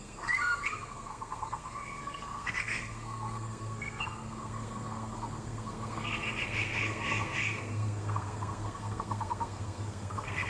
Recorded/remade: remade